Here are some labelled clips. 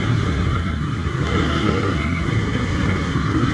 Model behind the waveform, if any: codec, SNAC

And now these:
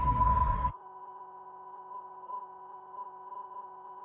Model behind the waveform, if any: codec, SNAC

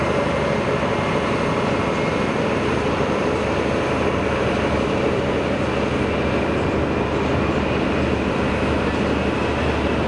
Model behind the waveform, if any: none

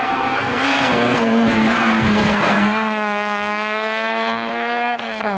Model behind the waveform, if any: codec, SNAC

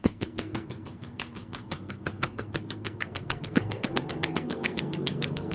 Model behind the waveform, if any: codec, SNAC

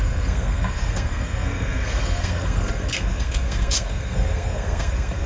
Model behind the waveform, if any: codec, SNAC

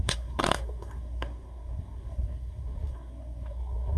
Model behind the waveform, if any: codec, SNAC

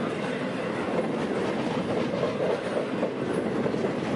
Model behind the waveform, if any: none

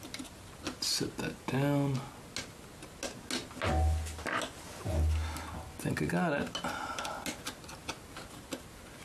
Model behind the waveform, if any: none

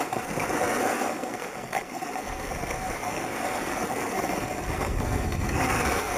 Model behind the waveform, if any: codec, SNAC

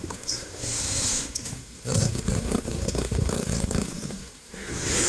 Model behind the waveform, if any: codec, SNAC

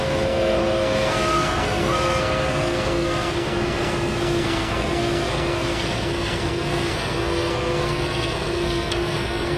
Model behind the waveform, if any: codec, SNAC